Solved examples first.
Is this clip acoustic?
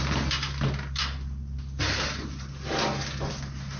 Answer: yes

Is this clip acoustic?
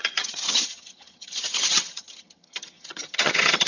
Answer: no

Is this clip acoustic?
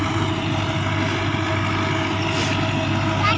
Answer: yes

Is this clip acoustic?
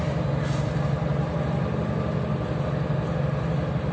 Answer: yes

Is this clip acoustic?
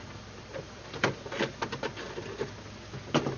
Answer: yes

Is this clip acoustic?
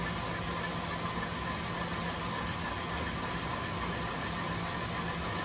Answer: yes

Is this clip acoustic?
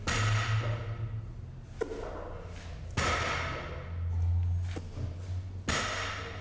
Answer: yes